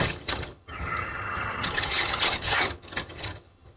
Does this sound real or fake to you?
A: fake